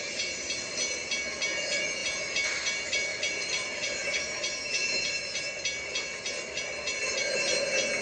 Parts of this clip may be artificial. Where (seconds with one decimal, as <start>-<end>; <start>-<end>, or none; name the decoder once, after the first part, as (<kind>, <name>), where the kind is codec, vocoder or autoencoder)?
none